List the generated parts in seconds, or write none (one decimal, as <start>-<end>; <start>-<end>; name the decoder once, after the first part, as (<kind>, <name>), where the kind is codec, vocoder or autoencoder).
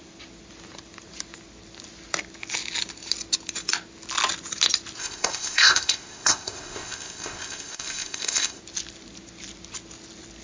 5.0-8.6 (codec, ZipCodec)